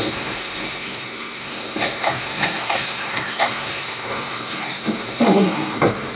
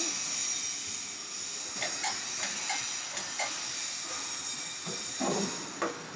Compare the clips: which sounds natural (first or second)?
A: second